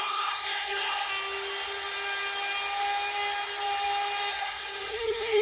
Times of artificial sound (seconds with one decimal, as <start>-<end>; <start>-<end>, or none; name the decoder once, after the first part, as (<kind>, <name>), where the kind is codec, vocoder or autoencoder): 0.0-1.1 (codec, SNAC); 4.3-5.4